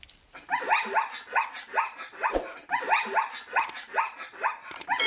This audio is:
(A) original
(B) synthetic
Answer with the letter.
A